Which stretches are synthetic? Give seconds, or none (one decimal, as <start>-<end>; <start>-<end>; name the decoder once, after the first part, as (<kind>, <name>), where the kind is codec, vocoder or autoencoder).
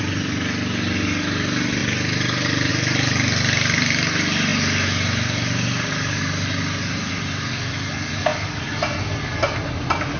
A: none